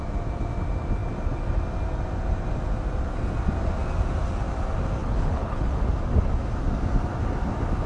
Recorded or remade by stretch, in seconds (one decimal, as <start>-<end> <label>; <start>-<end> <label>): 0.0-5.0 recorded; 5.0-5.8 remade; 5.8-7.9 recorded